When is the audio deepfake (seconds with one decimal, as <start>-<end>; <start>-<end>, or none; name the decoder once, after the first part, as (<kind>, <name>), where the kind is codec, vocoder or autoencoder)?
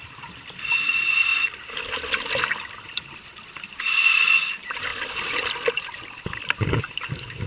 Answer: 0.0-1.3 (vocoder, BigVGAN v2); 2.5-7.5